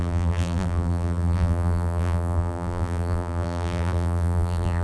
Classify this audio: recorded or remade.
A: remade